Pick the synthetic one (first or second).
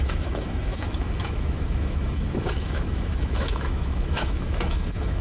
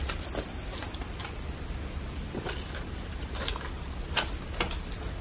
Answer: first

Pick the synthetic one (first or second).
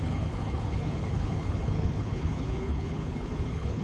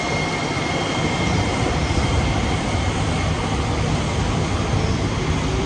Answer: first